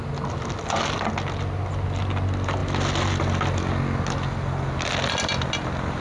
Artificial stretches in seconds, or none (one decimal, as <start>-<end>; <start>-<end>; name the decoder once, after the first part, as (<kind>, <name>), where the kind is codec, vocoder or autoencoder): none